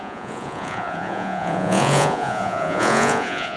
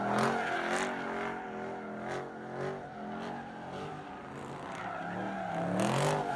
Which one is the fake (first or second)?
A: first